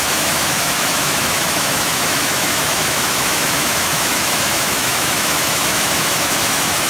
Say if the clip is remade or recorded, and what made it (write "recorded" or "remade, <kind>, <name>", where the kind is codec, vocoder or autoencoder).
remade, autoencoder, DAC-VAE